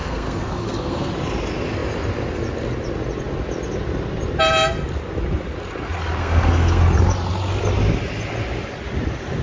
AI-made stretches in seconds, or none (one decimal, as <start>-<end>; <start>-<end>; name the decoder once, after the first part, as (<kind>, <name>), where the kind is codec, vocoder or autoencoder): 0.0-1.1 (codec, SNAC); 6.2-6.8